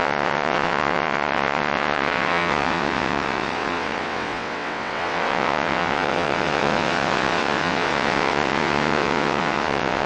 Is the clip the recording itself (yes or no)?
no